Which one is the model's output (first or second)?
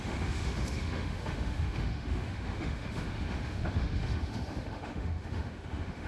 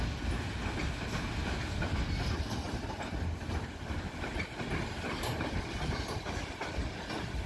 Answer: first